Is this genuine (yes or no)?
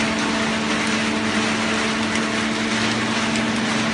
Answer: yes